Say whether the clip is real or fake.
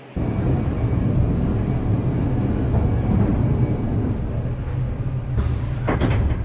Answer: real